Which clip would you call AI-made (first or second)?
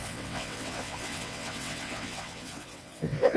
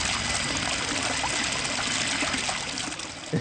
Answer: first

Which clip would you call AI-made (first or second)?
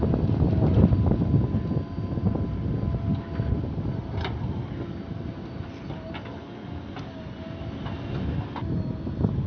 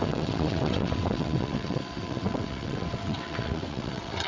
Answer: second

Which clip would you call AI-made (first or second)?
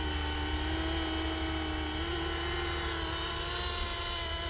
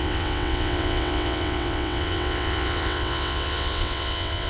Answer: second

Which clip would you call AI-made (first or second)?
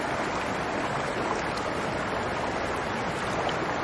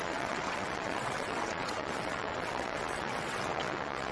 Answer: second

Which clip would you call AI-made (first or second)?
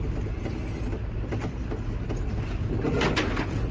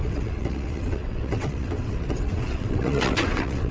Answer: second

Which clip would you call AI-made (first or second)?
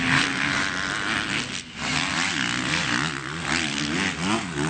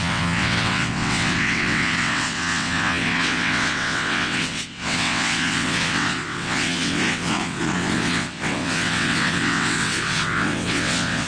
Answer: second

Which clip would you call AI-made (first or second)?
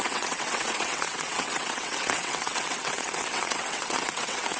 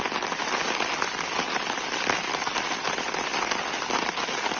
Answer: first